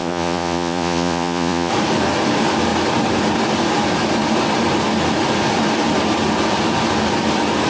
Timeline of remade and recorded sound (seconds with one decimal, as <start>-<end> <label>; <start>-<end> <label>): 0.0-1.7 remade; 1.7-7.7 recorded